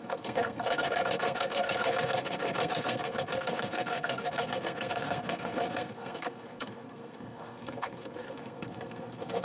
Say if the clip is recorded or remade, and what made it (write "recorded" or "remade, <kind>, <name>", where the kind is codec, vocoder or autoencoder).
remade, codec, SNAC